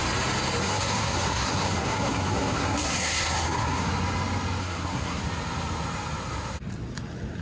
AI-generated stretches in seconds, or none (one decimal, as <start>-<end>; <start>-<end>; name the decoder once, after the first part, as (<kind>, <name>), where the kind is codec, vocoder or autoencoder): 0.6-3.9 (codec, SNAC); 4.6-5.2